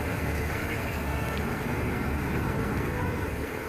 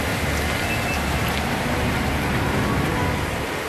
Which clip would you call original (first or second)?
second